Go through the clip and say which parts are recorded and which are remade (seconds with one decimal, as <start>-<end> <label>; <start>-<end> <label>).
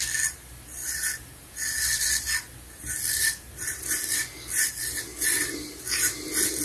0.0-6.6 recorded